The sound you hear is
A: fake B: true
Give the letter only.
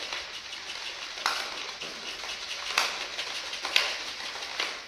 B